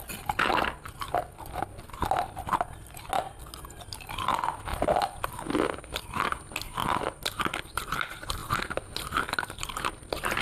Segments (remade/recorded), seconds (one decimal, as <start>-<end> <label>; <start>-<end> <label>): 0.0-10.4 recorded